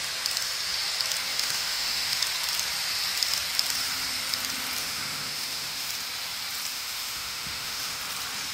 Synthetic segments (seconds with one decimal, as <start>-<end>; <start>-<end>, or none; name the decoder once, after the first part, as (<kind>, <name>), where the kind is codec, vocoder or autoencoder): 1.3-2.2 (autoencoder, DAC-VAE); 4.8-5.9; 6.7-8.0